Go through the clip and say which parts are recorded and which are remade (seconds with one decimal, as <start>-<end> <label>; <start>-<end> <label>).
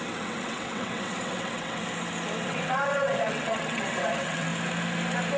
0.0-1.8 remade; 1.8-2.4 recorded; 2.4-4.5 remade; 4.5-5.4 recorded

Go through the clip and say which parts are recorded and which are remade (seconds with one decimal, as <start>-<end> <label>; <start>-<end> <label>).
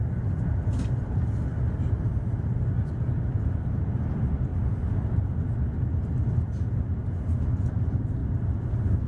0.0-9.1 recorded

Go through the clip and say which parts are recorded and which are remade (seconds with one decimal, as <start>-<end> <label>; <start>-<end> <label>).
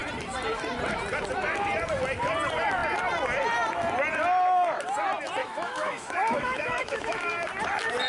0.0-5.4 recorded; 5.4-7.3 remade; 7.3-8.1 recorded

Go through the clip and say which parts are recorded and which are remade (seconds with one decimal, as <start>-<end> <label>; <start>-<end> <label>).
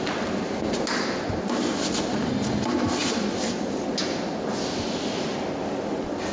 0.0-6.3 recorded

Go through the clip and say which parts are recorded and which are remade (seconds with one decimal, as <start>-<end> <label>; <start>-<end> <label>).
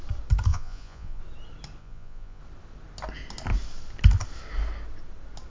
0.0-0.5 recorded; 0.5-1.2 remade; 1.2-1.8 recorded; 1.8-2.4 remade; 2.4-5.5 recorded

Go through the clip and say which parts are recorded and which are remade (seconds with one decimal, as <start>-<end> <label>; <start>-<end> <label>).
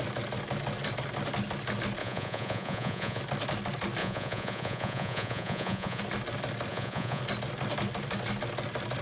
0.0-2.0 recorded; 2.0-3.2 remade; 3.2-4.0 recorded; 4.0-6.0 remade; 6.0-6.7 recorded; 6.7-7.2 remade; 7.2-9.0 recorded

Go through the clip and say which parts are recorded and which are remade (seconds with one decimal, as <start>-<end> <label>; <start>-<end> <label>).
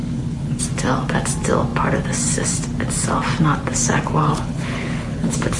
0.0-0.6 remade; 0.6-4.2 recorded; 4.2-5.6 remade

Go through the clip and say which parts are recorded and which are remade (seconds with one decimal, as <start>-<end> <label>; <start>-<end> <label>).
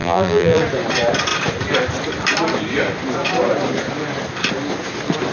0.0-0.6 remade; 0.6-5.3 recorded